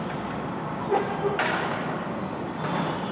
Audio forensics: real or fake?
real